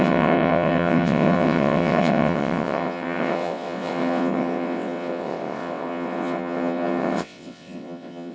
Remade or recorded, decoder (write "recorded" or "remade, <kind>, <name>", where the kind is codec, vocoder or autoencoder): remade, vocoder, WaveNeXt